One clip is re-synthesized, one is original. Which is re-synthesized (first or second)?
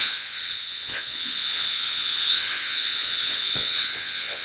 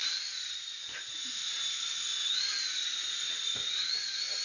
first